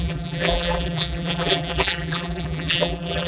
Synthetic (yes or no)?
yes